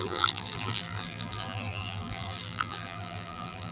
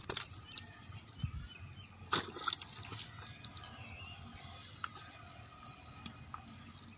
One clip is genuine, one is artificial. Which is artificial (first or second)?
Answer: first